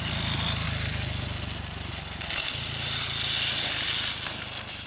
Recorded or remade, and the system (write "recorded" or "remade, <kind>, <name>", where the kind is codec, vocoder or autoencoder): recorded